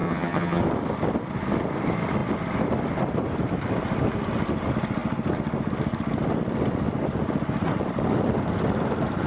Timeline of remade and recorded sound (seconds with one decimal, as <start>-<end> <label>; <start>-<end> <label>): 0.0-0.6 remade; 0.6-9.3 recorded